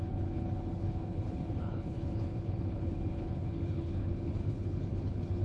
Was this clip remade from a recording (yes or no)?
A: yes